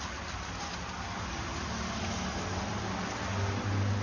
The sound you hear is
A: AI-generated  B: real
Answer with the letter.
B